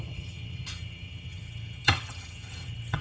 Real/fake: fake